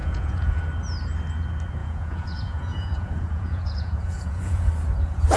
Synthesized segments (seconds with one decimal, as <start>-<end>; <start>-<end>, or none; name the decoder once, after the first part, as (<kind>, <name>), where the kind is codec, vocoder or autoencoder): 0.0-0.6 (vocoder, Vocos); 1.8-4.7